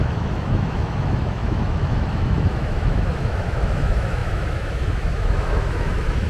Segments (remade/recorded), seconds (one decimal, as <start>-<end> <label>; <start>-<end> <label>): 0.0-6.3 remade